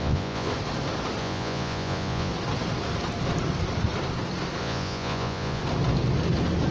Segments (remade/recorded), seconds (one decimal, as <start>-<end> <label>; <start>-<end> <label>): 0.0-0.5 remade; 0.5-1.2 recorded; 1.2-2.3 remade; 2.3-4.6 recorded; 4.6-5.6 remade; 5.6-6.7 recorded